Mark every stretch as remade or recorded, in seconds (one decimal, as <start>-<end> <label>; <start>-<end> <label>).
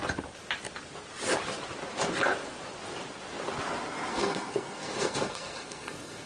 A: 0.0-4.1 recorded; 4.1-6.3 remade